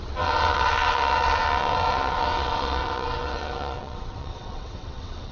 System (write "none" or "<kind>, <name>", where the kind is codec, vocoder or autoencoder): vocoder, WaveNeXt